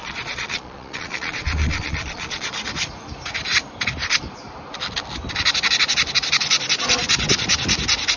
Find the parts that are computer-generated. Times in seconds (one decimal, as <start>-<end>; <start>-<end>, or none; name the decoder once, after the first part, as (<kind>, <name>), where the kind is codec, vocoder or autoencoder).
0.0-2.5 (vocoder, Vocos)